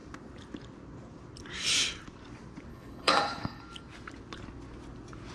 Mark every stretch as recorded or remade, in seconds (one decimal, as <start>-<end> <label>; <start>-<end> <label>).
0.0-2.7 recorded; 2.7-3.6 remade; 3.6-5.3 recorded